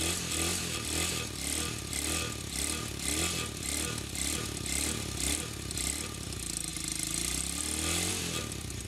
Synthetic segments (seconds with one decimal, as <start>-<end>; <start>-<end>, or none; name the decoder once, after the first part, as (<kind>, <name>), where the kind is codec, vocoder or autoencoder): none